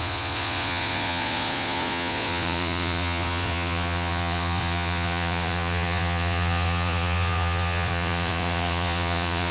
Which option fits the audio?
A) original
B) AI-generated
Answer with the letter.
B